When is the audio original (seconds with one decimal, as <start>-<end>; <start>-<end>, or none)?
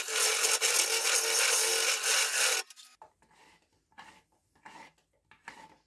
0.0-5.9